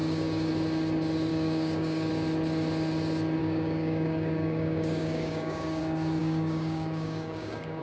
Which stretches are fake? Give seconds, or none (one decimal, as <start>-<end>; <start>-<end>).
0.0-0.5; 1.3-2.1; 3.4-5.8; 6.2-7.8